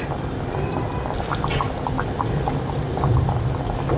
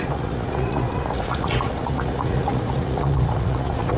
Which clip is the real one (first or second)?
first